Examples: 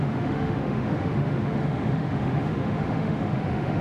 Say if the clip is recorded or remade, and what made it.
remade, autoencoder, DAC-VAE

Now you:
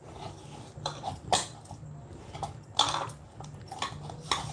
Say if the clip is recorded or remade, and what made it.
recorded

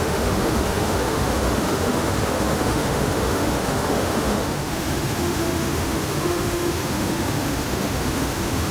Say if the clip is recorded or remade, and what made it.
remade, autoencoder, DAC-VAE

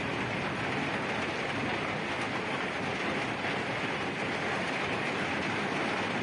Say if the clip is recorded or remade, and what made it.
recorded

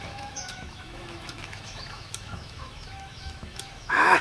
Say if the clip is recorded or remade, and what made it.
remade, autoencoder, DAC-VAE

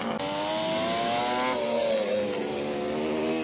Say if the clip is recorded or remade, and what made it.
recorded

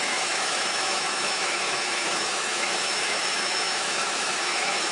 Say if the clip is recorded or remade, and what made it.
remade, autoencoder, DAC-VAE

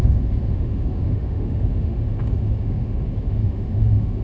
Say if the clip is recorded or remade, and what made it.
remade, autoencoder, DAC-VAE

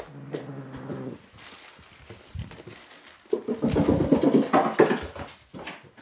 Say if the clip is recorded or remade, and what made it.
recorded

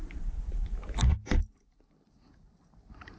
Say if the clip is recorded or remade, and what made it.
recorded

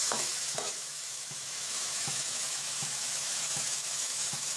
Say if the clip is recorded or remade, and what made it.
remade, autoencoder, DAC-VAE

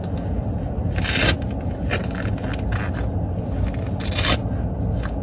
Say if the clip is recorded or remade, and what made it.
recorded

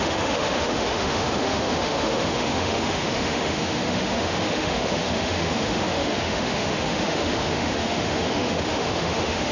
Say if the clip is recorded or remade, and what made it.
remade, autoencoder, DAC-VAE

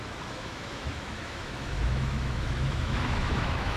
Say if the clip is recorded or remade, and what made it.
remade, autoencoder, DAC-VAE